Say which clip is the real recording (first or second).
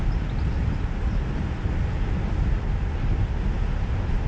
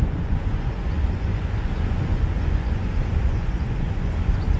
first